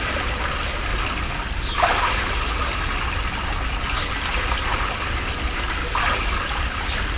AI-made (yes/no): no